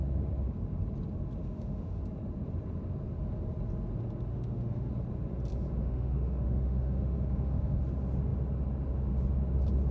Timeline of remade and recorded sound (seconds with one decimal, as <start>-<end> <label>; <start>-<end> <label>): 0.0-1.4 recorded; 1.4-2.0 remade; 2.0-4.3 recorded; 4.3-4.9 remade; 4.9-5.8 recorded; 5.8-7.8 remade; 7.8-9.9 recorded